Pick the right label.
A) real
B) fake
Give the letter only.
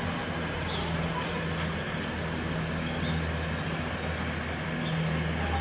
A